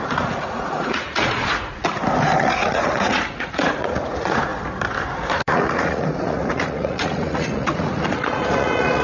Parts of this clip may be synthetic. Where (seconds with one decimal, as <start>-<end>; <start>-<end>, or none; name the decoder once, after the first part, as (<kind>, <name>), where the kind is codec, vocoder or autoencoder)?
0.0-1.8 (vocoder, Vocos); 2.4-4.5; 5.3-9.0